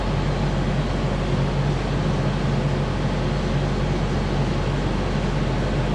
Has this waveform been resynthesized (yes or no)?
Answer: no